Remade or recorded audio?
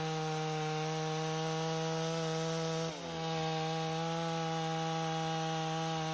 recorded